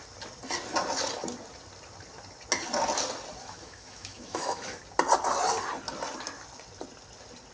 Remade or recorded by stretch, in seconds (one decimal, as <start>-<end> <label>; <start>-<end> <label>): 0.0-3.4 recorded; 3.4-4.8 remade; 4.8-7.5 recorded